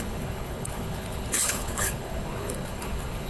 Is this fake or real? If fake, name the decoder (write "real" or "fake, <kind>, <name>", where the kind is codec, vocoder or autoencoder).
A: fake, codec, HILCodec